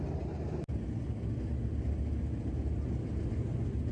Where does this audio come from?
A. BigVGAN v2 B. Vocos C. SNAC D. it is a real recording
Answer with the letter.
D